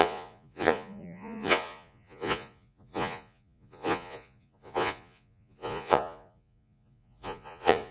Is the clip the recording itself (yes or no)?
no